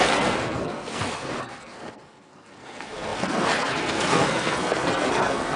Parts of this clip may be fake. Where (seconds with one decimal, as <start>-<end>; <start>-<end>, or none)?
0.0-5.6